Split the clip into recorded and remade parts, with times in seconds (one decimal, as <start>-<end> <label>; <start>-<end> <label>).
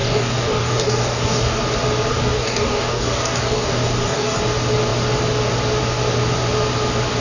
0.0-1.6 remade; 1.6-2.1 recorded; 2.1-4.4 remade; 4.4-7.2 recorded